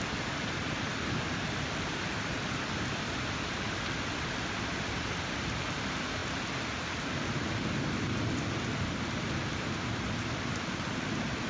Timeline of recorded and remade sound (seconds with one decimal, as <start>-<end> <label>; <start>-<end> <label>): 0.0-11.5 remade